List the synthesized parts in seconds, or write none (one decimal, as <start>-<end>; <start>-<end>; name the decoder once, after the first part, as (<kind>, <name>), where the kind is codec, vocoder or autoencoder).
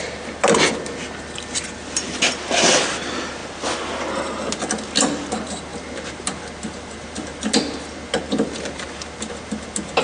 none